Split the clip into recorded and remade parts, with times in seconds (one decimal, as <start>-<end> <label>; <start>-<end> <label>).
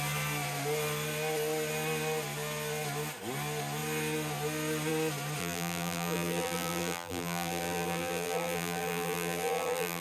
0.0-5.4 recorded; 5.4-10.0 remade